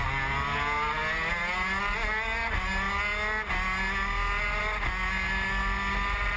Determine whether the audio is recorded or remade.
recorded